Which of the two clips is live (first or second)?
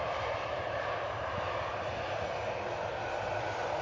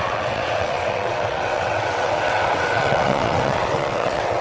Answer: first